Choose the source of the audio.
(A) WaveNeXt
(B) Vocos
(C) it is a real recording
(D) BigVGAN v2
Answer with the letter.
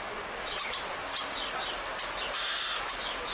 C